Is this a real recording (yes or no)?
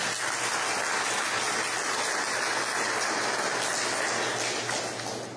yes